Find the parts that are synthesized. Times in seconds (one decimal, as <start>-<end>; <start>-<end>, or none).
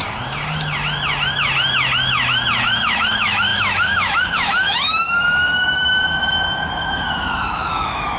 2.6-8.2